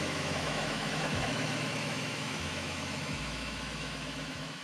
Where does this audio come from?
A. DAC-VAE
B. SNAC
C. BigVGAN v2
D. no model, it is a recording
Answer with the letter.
A